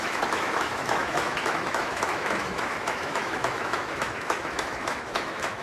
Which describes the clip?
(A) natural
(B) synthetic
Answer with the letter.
B